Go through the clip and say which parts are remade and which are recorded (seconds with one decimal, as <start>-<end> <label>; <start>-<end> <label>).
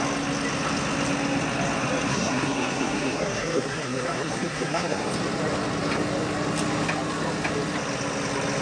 0.0-2.1 recorded; 2.1-5.1 remade; 5.1-8.6 recorded